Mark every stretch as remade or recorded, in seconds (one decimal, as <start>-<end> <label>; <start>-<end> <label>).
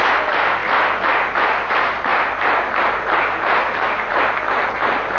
0.0-0.6 remade; 0.6-1.3 recorded; 1.3-5.2 remade